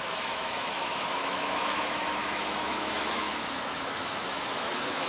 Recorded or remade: remade